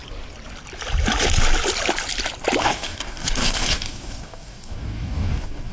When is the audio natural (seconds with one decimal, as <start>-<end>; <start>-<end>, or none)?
0.0-2.6